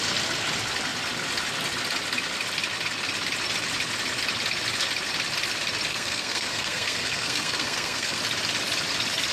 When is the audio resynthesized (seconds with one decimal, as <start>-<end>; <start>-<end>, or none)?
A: 5.9-8.2